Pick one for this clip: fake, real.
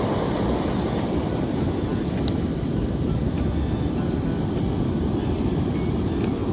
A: fake